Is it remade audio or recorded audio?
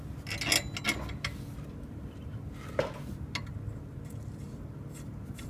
recorded